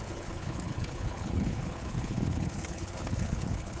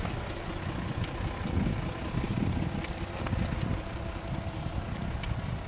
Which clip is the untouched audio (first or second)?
second